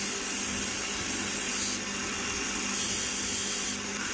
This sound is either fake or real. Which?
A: real